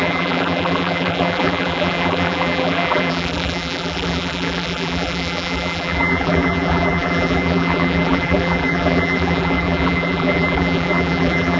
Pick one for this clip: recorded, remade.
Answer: remade